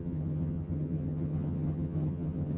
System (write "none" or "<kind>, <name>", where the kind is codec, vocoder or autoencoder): vocoder, HiFi-GAN